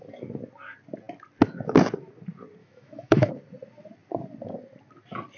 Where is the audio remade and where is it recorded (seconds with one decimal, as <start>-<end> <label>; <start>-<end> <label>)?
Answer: 0.0-2.6 recorded; 2.6-3.3 remade; 3.3-5.4 recorded